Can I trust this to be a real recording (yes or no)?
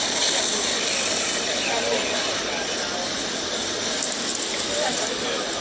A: yes